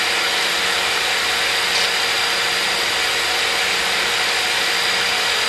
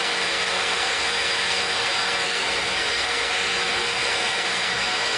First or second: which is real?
first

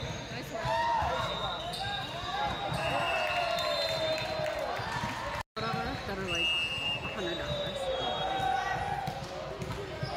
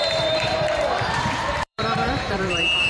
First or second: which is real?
first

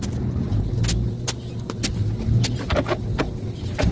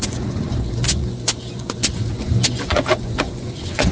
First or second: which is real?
first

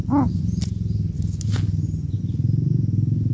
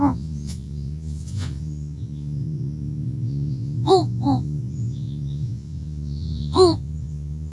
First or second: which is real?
first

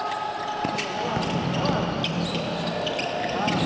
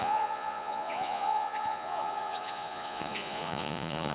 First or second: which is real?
first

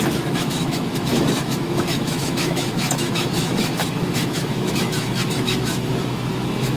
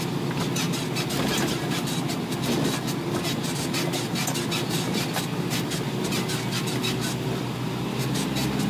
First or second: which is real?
second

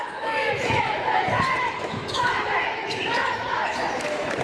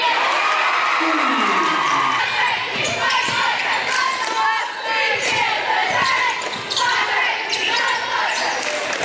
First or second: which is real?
second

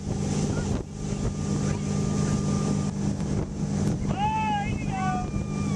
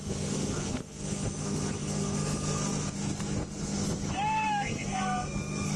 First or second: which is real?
first